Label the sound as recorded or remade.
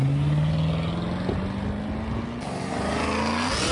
recorded